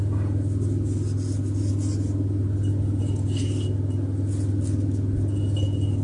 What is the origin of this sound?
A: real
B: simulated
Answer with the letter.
A